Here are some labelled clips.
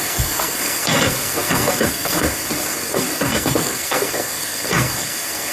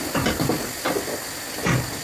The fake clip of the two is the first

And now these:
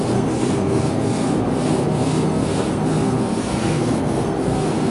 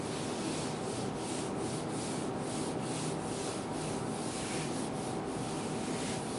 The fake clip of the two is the first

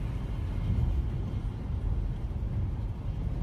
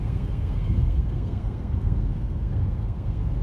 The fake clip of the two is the second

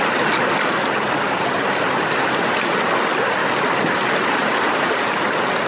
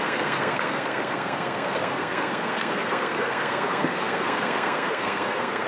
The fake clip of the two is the second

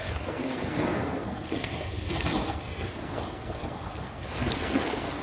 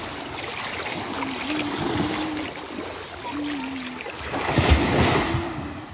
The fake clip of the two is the first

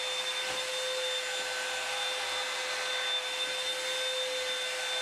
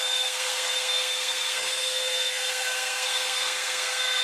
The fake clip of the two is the second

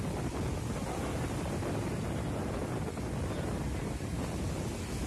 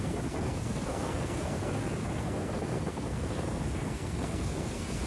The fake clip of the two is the second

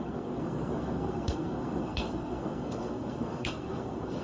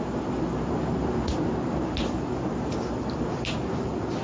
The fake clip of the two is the first